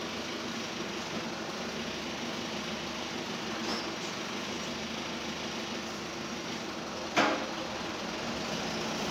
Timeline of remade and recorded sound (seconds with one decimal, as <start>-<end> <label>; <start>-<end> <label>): 0.0-9.1 recorded